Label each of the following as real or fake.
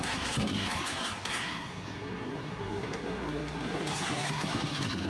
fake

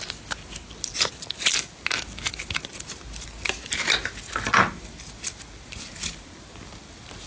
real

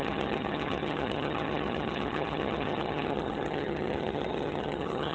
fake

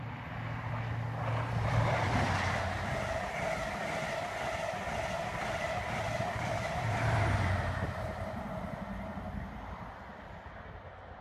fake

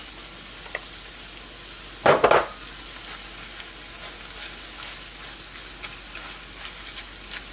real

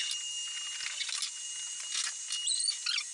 real